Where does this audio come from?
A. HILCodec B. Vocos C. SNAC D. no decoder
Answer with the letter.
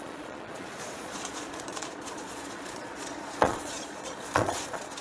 B